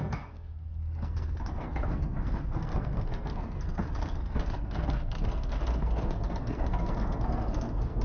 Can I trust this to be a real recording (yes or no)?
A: no